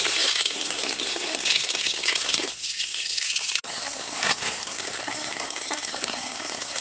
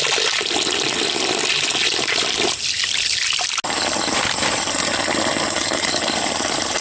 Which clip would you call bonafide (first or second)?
second